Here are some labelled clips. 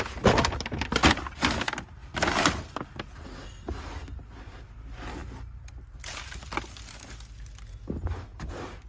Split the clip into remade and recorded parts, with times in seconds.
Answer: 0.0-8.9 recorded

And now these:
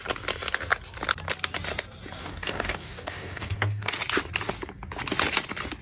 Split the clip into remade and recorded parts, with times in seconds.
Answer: 0.0-2.2 recorded; 2.2-3.9 remade; 3.9-5.8 recorded

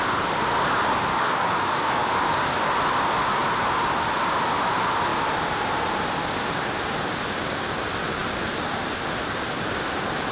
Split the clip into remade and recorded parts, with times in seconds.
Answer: 0.0-1.1 recorded; 1.1-2.7 remade; 2.7-10.3 recorded

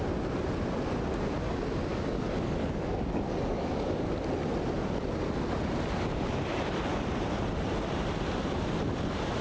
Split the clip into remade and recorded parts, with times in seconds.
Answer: 0.0-1.9 recorded; 1.9-4.1 remade; 4.1-9.4 recorded

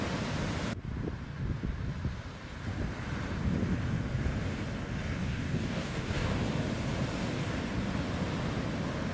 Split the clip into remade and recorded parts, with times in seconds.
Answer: 0.0-5.2 recorded; 5.2-6.4 remade; 6.4-9.1 recorded

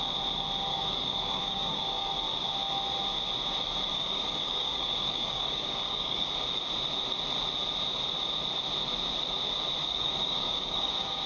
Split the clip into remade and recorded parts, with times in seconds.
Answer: 0.0-0.7 recorded; 0.7-2.1 remade; 2.1-3.9 recorded; 3.9-6.3 remade; 6.3-9.8 recorded; 9.8-11.3 remade